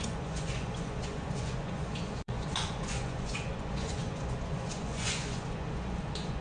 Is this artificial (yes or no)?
yes